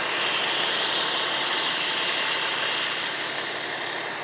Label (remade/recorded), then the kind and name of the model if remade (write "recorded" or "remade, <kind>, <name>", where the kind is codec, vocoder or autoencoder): recorded